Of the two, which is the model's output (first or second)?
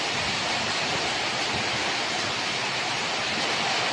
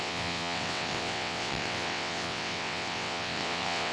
second